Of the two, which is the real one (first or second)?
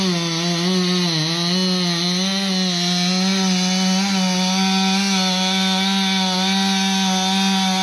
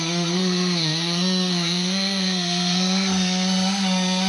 first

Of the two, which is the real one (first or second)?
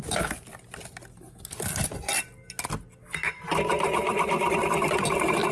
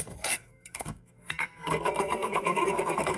first